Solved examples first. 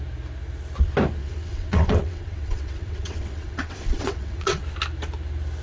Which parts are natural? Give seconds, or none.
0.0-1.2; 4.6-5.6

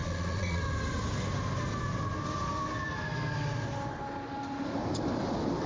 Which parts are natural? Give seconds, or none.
0.6-5.7

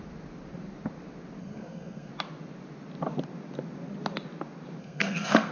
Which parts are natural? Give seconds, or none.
0.0-1.4; 2.1-4.8

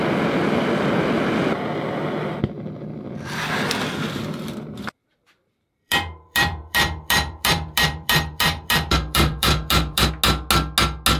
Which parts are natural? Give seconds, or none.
0.0-5.0; 10.1-11.2